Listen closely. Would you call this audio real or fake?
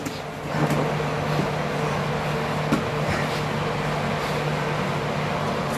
real